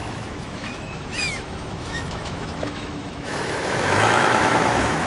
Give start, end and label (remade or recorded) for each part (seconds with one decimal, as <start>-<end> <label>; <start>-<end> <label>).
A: 0.0-5.1 remade